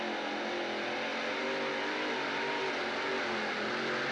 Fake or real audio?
real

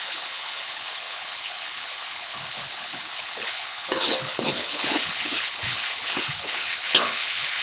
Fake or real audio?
fake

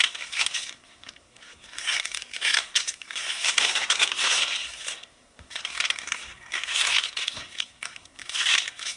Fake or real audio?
fake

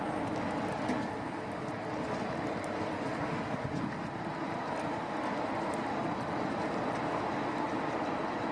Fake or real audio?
fake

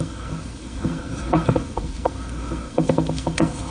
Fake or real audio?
fake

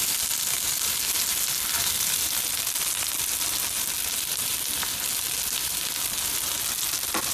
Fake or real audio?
real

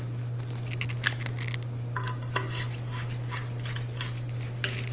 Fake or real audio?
real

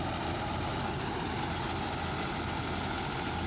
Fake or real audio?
real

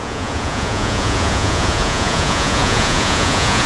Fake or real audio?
fake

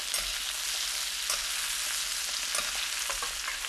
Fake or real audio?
real